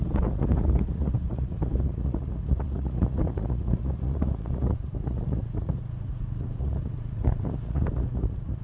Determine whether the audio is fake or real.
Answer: fake